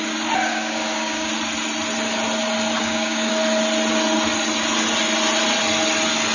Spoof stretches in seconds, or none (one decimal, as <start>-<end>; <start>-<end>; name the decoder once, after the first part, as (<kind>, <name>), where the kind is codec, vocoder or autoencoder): 0.5-1.3 (codec, DAC); 2.8-3.3